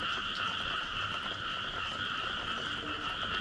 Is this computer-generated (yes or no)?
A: no